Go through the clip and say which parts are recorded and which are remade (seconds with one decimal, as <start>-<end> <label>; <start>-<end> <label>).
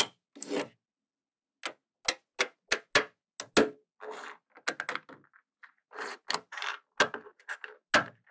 0.0-8.3 recorded